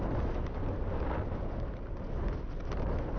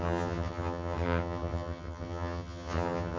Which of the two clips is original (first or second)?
first